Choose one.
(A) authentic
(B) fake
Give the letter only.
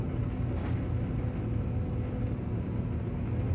A